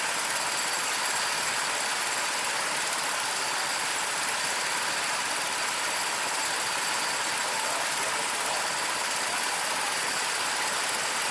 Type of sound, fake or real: real